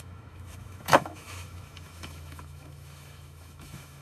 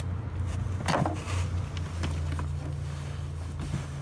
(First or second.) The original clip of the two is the second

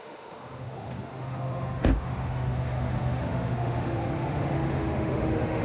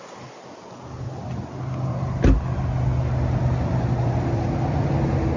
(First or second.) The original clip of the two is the second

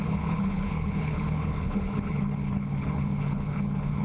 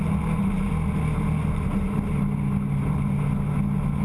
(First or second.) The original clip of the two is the second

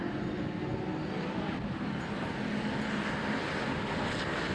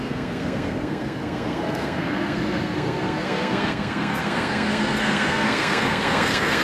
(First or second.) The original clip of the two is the first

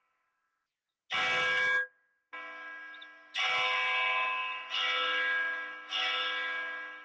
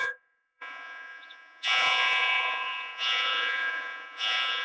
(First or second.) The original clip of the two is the first